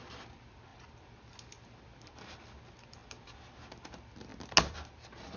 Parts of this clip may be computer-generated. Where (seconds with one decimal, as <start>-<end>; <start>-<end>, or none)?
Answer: none